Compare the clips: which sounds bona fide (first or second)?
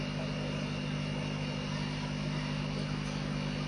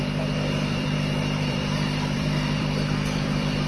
first